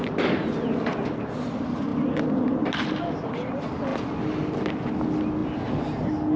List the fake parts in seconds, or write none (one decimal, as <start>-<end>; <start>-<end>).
none